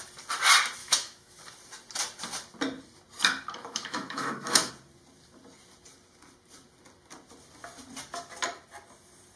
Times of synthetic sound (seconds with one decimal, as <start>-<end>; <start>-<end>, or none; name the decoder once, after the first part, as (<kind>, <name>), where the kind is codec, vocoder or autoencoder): 0.8-1.4 (autoencoder, DAC-VAE); 3.6-4.7